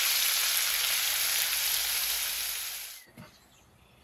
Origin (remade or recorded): recorded